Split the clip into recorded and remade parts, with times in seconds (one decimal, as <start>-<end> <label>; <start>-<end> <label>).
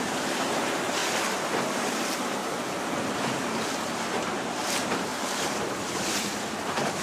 0.0-1.0 remade; 1.0-1.6 recorded; 1.6-2.4 remade; 2.4-3.1 recorded; 3.1-7.0 remade